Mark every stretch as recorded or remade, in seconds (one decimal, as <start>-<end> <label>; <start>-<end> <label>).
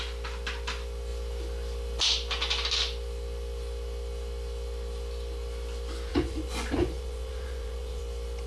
0.0-6.1 recorded; 6.1-8.0 remade; 8.0-8.5 recorded